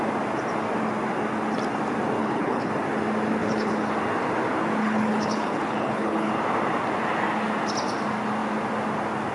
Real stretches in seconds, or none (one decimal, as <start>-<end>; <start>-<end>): 0.0-2.2; 2.7-3.4; 3.9-4.8; 6.3-9.3